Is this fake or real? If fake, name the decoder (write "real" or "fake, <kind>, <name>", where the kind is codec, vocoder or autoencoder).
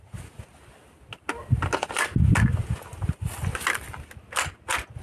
real